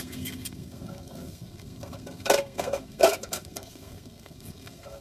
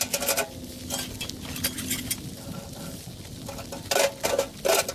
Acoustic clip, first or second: second